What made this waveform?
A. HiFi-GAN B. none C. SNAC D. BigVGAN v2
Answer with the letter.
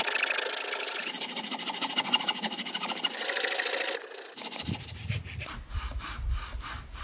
B